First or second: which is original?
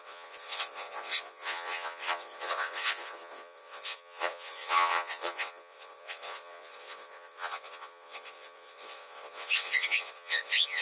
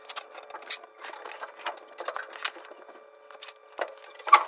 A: second